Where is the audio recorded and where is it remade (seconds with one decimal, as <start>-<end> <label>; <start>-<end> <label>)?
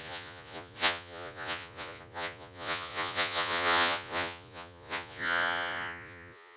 0.0-6.6 remade